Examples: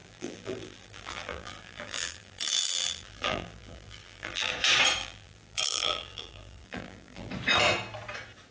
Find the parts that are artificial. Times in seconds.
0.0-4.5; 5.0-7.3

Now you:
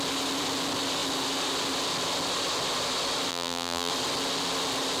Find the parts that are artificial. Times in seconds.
3.3-3.9

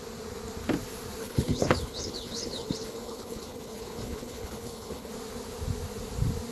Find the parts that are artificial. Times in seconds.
1.2-5.1